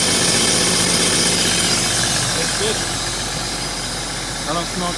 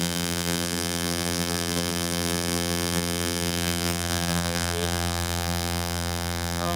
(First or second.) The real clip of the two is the first